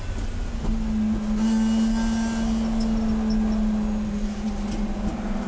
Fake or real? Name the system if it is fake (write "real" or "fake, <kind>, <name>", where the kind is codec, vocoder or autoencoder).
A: real